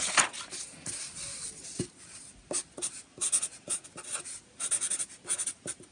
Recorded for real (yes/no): yes